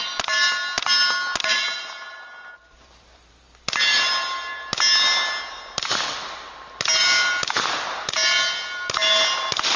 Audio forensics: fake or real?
real